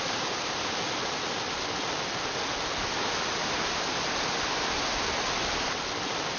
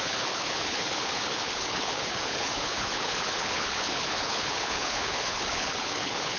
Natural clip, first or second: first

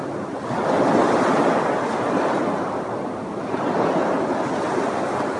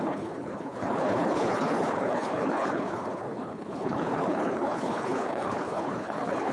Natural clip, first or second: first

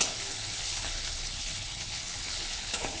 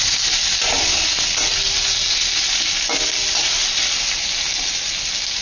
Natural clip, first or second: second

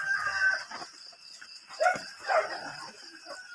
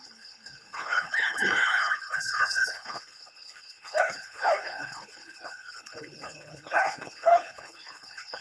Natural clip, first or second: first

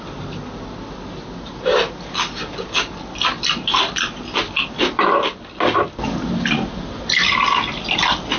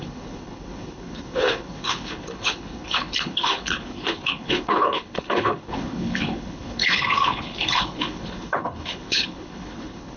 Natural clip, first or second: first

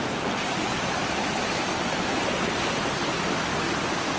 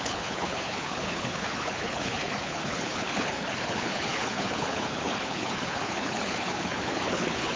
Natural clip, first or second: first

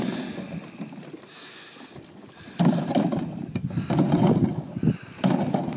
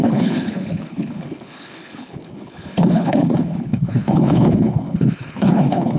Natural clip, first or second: first